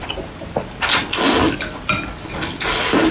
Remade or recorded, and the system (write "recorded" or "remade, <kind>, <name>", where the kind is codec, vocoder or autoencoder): recorded